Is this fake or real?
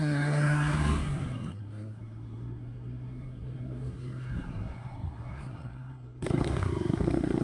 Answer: fake